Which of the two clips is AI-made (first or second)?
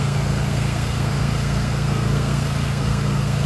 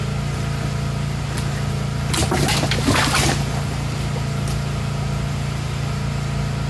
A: first